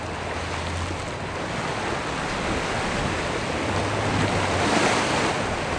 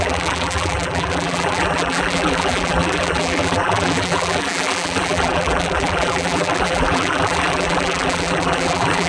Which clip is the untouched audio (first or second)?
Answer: first